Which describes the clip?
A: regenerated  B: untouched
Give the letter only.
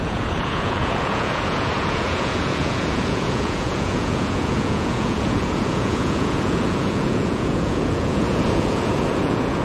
A